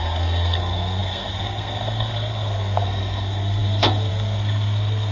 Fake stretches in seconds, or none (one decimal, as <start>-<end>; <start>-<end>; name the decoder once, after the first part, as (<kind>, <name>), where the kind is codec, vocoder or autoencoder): 0.0-5.1 (codec, SNAC)